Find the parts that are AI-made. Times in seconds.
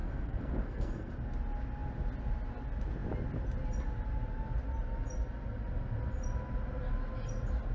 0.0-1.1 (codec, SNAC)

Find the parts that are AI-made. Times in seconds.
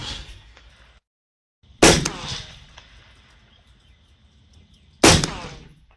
0.0-0.7 (codec, SNAC)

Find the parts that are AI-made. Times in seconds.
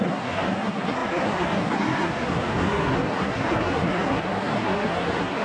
0.0-5.4 (codec, SNAC)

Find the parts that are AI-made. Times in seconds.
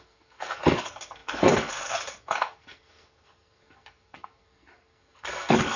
0.0-5.8 (codec, SNAC)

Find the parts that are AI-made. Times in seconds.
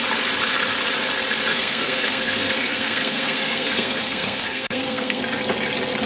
1.5-5.2 (codec, SNAC)